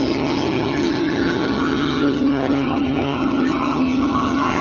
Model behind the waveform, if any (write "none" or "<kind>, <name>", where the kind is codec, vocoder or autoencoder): vocoder, HiFi-GAN